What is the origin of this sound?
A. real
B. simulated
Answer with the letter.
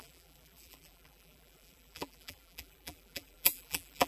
B